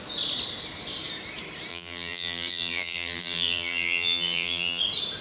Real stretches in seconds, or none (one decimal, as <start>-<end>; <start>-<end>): 0.0-1.7; 4.8-5.2